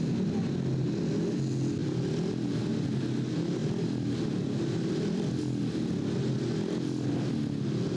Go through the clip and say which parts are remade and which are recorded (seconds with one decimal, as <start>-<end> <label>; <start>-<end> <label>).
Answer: 0.0-1.8 recorded; 1.8-2.6 remade; 2.6-3.6 recorded; 3.6-5.4 remade; 5.4-8.0 recorded